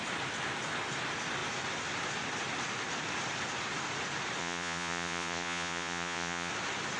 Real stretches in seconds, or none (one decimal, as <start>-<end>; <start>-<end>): 0.0-4.4; 6.5-7.0